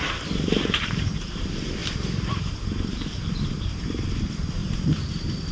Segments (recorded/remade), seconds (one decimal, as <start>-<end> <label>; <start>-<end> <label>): 0.0-1.4 remade; 1.4-1.8 recorded; 1.8-3.1 remade; 3.1-4.6 recorded; 4.6-5.5 remade